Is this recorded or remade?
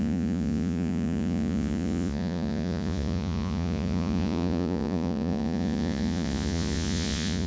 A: remade